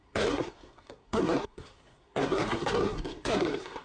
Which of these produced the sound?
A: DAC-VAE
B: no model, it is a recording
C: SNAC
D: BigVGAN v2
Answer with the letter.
C